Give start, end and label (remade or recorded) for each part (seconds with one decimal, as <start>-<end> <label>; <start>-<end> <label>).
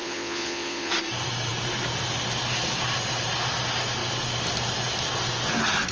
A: 0.0-0.9 remade; 0.9-5.9 recorded